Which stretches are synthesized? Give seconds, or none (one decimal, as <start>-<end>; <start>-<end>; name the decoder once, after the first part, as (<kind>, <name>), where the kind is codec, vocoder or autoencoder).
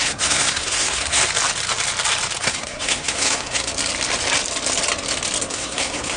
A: 0.0-1.2 (codec, SNAC); 2.4-3.7; 5.4-6.2